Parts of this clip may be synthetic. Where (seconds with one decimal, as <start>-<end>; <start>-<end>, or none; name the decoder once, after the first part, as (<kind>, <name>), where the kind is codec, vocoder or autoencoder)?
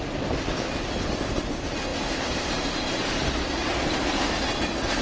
none